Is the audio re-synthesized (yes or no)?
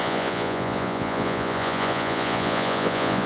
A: yes